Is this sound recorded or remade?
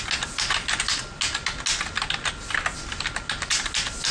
recorded